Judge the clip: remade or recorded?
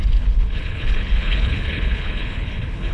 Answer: remade